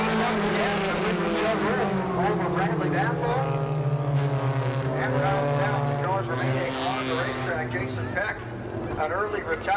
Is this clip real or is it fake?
real